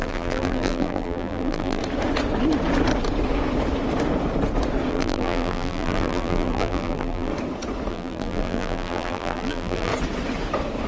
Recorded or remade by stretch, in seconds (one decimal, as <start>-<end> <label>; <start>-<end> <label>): 0.0-1.8 remade; 1.8-4.9 recorded; 4.9-7.3 remade; 7.3-7.9 recorded; 7.9-9.9 remade; 9.9-10.9 recorded